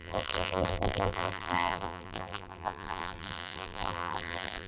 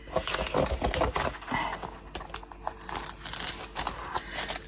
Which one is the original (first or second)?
second